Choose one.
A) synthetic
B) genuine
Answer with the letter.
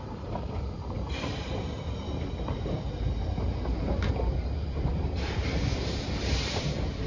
A